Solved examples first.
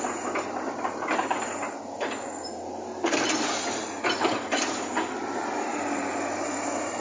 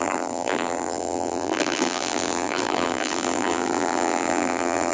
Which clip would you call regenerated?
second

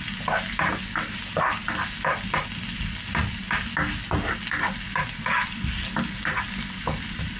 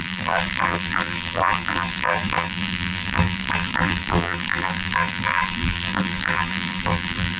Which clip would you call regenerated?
second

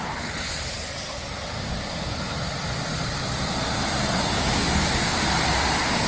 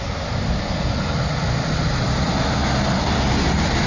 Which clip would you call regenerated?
first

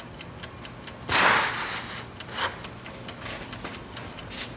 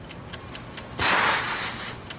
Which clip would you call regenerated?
second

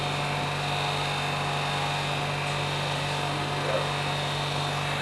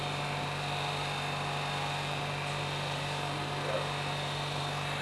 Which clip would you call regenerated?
second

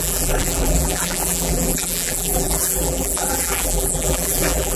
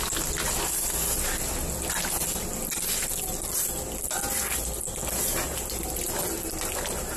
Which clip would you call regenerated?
first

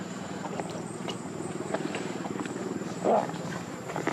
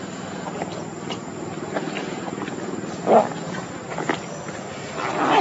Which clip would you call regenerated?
first